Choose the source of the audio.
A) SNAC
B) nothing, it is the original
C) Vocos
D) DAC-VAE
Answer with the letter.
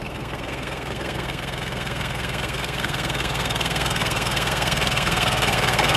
A